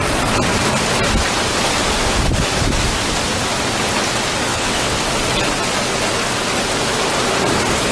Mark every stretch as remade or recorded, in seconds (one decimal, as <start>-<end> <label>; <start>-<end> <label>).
0.0-4.5 recorded; 4.5-5.0 remade; 5.0-7.9 recorded